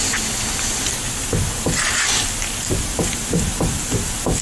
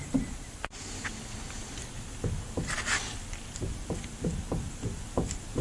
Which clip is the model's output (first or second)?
second